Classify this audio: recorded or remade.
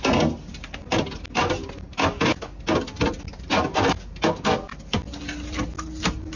recorded